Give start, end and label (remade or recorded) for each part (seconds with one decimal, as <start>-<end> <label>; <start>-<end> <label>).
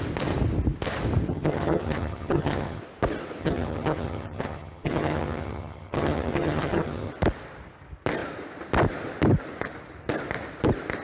0.0-1.3 recorded; 1.3-2.8 remade; 2.8-3.4 recorded; 3.4-7.1 remade; 7.1-11.0 recorded